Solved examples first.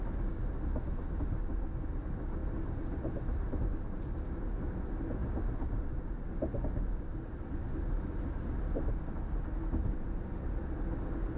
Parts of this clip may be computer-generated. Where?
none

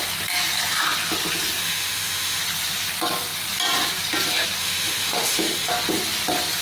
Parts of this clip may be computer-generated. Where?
1.6-2.4 (autoencoder, DAC-VAE); 4.6-5.7